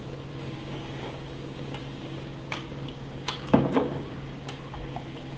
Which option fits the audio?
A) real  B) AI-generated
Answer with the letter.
B